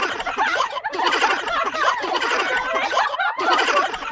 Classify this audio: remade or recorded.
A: recorded